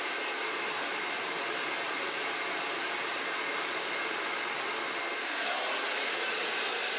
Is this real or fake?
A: real